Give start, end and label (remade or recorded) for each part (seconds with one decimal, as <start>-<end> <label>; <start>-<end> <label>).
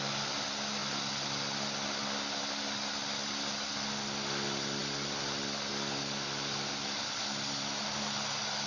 0.0-8.7 recorded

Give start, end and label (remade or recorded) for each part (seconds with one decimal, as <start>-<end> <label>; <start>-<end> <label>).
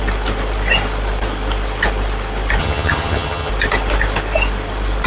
0.0-2.6 recorded; 2.6-3.5 remade; 3.5-5.1 recorded